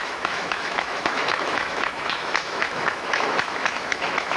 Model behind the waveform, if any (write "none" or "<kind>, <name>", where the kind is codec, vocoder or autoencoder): autoencoder, DAC-VAE